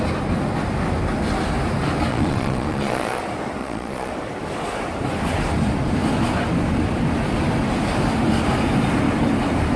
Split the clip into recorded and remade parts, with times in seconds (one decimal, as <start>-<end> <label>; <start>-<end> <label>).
0.0-2.1 recorded; 2.1-3.2 remade; 3.2-3.6 recorded; 3.6-4.1 remade; 4.1-9.8 recorded